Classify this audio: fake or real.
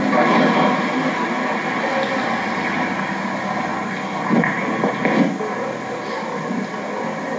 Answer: real